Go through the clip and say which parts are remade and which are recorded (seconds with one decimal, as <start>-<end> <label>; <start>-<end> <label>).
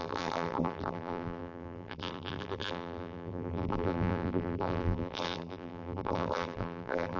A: 0.0-7.2 remade